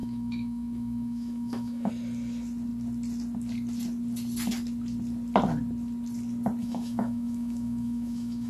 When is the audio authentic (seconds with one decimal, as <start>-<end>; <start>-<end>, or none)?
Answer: 1.9-6.6